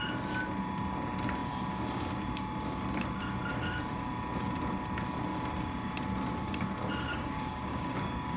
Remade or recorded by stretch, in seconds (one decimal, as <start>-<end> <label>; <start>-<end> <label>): 0.0-7.1 recorded; 7.1-8.4 remade